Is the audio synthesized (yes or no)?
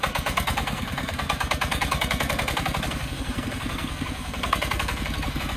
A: yes